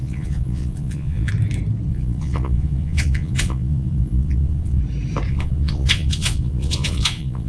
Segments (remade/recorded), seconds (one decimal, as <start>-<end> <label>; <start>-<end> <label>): 0.0-1.3 remade; 1.3-1.9 recorded; 1.9-4.8 remade; 4.8-5.3 recorded; 5.3-7.5 remade